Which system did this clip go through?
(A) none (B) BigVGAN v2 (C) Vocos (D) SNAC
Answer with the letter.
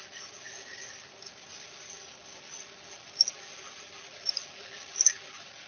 A